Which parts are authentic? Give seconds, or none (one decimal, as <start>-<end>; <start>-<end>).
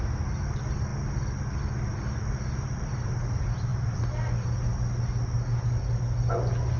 0.0-6.8